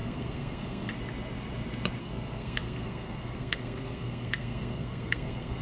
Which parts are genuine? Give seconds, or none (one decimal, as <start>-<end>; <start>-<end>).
0.9-2.0